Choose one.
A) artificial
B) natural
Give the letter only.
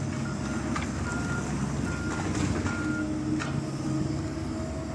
B